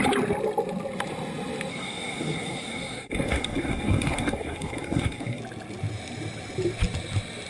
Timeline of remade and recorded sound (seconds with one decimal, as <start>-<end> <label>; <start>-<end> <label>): 0.0-1.7 recorded; 1.7-5.4 remade; 5.4-7.5 recorded